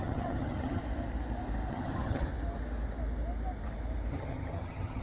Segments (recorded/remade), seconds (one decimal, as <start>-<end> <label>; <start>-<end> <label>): 0.0-0.8 remade; 0.8-1.7 recorded; 1.7-2.3 remade; 2.3-4.1 recorded; 4.1-5.0 remade